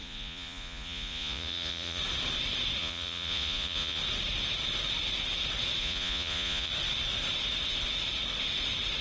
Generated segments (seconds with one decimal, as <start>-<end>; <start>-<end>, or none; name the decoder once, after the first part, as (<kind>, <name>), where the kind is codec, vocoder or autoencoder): 0.0-2.0 (vocoder, Vocos); 2.8-4.0; 5.8-6.7